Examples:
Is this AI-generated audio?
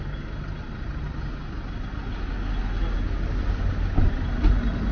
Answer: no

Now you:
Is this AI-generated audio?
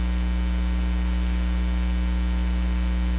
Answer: no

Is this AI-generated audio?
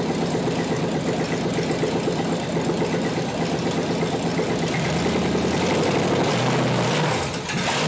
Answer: no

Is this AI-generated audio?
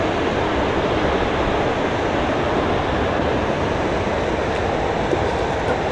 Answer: no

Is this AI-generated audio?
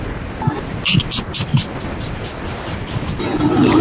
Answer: no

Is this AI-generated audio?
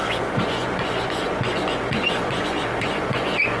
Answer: yes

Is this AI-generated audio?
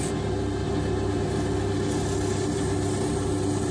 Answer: no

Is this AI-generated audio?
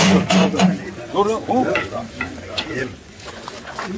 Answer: yes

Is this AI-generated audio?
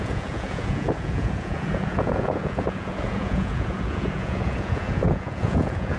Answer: yes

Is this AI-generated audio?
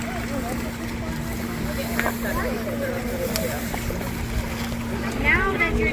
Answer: no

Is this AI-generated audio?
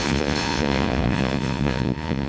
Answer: yes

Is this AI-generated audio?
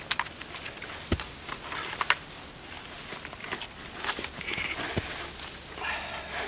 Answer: no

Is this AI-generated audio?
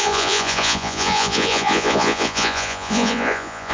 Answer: yes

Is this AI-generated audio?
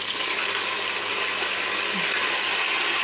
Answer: no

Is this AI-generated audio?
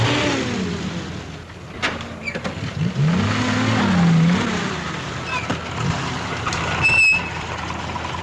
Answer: no